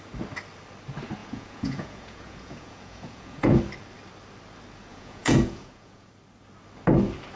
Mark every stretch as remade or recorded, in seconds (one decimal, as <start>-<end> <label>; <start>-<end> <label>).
0.0-1.2 recorded; 1.2-3.6 remade; 3.6-4.9 recorded; 4.9-6.1 remade; 6.1-7.4 recorded